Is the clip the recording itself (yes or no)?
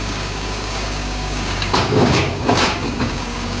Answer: no